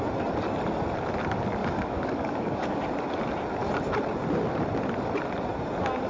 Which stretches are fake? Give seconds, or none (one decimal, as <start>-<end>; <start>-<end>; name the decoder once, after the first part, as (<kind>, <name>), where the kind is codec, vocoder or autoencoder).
1.6-2.8 (codec, DAC)